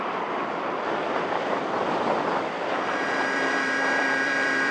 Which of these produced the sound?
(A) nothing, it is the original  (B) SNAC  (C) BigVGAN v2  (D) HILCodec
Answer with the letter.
C